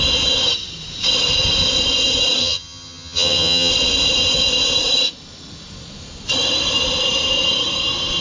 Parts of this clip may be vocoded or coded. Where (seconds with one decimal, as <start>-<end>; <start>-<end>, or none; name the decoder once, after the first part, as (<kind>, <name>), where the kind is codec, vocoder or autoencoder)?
2.4-3.7 (vocoder, HiFi-GAN)